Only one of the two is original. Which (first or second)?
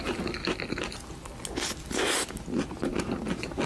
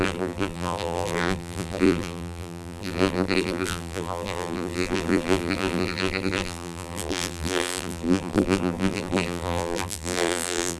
first